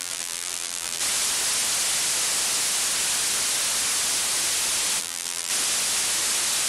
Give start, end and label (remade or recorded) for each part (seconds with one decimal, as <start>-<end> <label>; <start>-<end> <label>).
0.0-1.0 remade; 1.0-5.0 recorded; 5.0-5.5 remade; 5.5-6.7 recorded